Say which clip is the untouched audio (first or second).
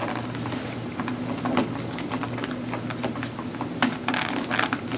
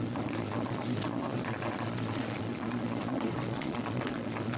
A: first